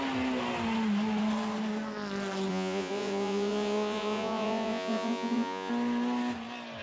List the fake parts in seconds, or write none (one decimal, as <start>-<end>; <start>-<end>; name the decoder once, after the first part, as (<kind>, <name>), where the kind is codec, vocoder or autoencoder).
2.5-5.7 (vocoder, Vocos)